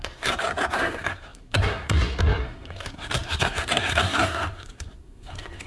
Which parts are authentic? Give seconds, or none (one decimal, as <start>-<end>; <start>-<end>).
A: none